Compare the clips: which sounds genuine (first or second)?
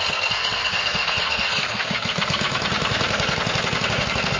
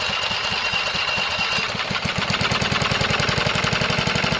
second